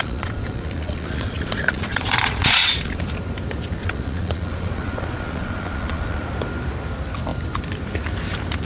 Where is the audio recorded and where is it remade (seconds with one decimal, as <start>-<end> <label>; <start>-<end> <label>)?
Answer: 0.0-3.0 remade; 3.0-3.8 recorded; 3.8-6.3 remade; 6.3-8.6 recorded

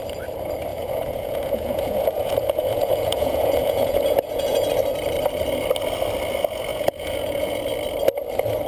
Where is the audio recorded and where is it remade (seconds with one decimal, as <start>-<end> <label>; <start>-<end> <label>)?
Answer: 0.0-0.7 recorded; 0.7-4.7 remade; 4.7-6.7 recorded; 6.7-7.6 remade; 7.6-8.7 recorded

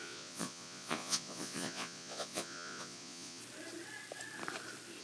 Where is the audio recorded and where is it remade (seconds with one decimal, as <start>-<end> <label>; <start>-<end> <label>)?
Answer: 0.0-3.4 remade; 3.4-5.0 recorded

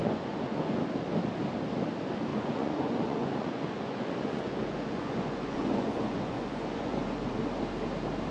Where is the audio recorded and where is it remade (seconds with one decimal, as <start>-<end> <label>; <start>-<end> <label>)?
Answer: 0.0-0.8 remade; 0.8-2.3 recorded; 2.3-7.3 remade; 7.3-8.3 recorded